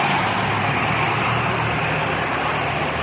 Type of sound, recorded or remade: recorded